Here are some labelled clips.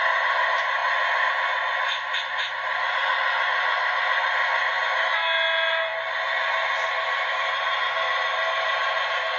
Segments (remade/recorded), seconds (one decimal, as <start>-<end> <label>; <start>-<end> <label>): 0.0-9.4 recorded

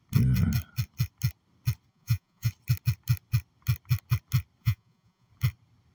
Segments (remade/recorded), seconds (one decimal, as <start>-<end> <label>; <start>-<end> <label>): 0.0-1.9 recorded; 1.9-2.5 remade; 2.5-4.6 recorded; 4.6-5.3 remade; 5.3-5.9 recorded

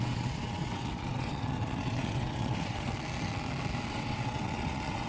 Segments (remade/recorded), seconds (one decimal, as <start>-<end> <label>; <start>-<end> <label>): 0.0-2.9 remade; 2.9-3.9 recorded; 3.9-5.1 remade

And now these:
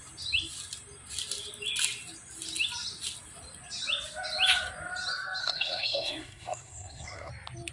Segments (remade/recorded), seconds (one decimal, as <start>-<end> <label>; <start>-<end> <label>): 0.0-5.4 recorded; 5.4-7.3 remade; 7.3-7.7 recorded

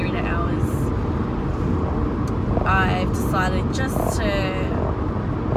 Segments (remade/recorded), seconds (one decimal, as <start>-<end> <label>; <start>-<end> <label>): 0.0-5.6 recorded

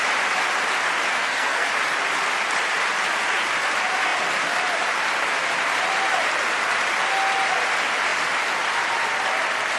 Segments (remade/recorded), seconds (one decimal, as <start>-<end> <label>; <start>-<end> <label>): 0.0-1.1 recorded; 1.1-1.7 remade; 1.7-9.8 recorded

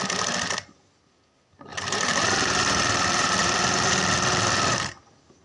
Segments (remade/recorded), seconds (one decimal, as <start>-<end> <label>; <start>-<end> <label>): 0.0-1.7 recorded; 1.7-4.9 remade; 4.9-5.4 recorded

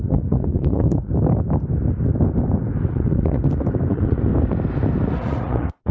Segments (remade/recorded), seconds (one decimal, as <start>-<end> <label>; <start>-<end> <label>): 0.0-1.1 remade; 1.1-2.9 recorded; 2.9-3.4 remade; 3.4-3.9 recorded; 3.9-4.3 remade; 4.3-5.1 recorded; 5.1-5.9 remade